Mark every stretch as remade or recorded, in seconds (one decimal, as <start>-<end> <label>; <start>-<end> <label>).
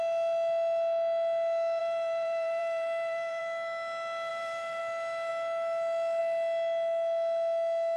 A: 0.0-1.8 recorded; 1.8-3.4 remade; 3.4-4.3 recorded; 4.3-4.8 remade; 4.8-8.0 recorded